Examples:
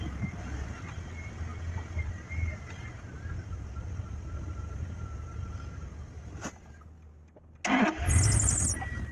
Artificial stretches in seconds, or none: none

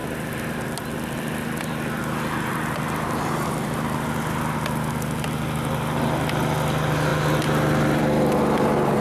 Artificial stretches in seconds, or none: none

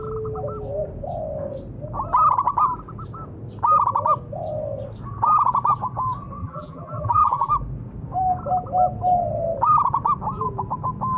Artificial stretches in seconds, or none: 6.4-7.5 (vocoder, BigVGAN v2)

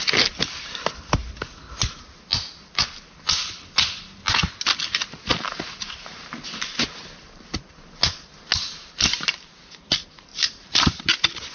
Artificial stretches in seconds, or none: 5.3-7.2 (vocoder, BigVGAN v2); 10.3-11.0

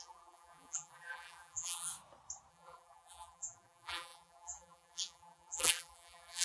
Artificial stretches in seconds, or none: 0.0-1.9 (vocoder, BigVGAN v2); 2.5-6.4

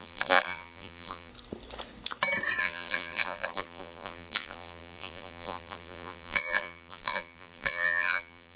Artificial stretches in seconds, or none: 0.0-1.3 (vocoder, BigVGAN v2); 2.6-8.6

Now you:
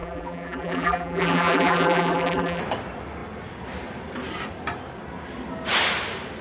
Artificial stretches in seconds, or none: 0.0-2.6 (vocoder, BigVGAN v2)

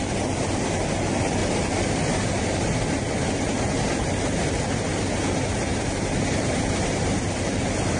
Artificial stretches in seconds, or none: 1.4-5.0 (vocoder, BigVGAN v2); 5.7-8.0